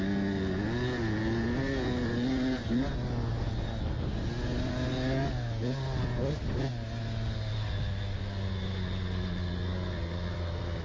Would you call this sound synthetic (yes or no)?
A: no